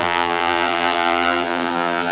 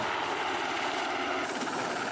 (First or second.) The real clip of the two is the second